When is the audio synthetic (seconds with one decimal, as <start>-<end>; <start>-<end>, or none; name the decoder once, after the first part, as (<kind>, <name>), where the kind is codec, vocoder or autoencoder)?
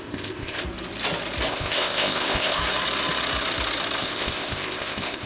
0.0-0.6 (codec, ZipCodec); 1.5-2.6; 4.0-5.3